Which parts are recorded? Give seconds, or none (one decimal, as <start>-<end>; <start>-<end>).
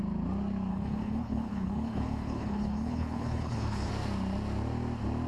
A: 0.0-0.7; 3.9-5.3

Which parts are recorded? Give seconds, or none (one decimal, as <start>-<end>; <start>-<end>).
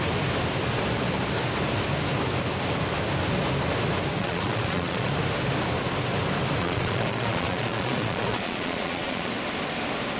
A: 0.0-4.2; 5.1-6.6; 9.3-10.2